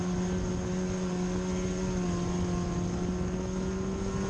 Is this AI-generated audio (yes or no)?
no